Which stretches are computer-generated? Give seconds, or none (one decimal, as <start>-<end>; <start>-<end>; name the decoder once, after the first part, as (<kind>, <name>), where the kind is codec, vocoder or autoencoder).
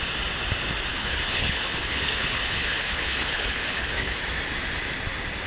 0.9-4.2 (codec, HILCodec)